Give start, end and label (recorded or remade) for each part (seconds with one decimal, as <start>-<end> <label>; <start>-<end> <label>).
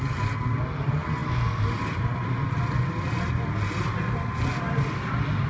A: 0.0-5.5 recorded